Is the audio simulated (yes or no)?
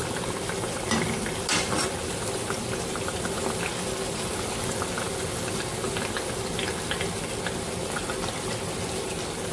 no